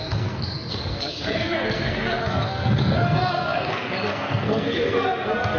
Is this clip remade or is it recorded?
remade